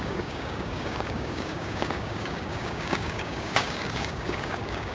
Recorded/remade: remade